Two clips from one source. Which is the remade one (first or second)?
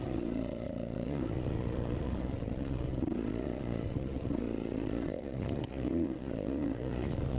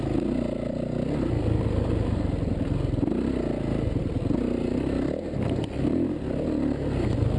first